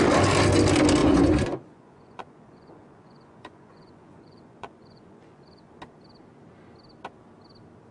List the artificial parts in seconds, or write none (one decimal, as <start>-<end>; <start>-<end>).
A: 1.0-5.7